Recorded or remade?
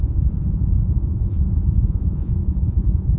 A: remade